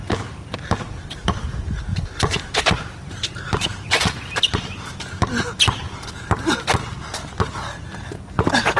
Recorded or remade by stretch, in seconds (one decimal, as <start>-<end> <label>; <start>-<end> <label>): 0.0-1.9 recorded; 1.9-3.1 remade; 3.1-8.8 recorded